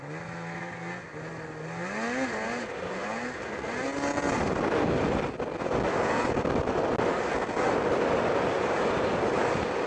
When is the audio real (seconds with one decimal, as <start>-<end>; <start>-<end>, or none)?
0.0-9.9